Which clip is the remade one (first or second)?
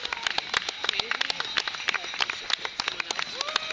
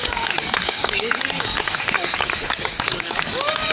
second